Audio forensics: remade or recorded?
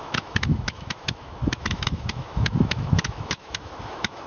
remade